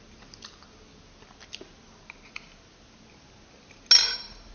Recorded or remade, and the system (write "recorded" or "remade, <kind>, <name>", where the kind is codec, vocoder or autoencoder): recorded